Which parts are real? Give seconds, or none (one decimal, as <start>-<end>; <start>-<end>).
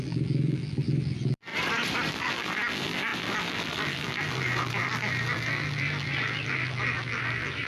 1.5-2.1